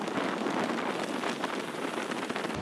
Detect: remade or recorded remade